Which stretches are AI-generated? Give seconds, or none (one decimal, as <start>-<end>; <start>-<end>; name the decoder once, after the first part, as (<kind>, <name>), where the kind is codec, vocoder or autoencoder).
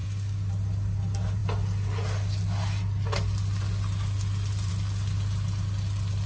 none